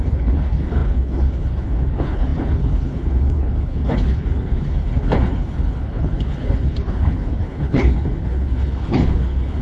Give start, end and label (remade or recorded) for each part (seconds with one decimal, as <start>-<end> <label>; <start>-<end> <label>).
0.0-9.6 remade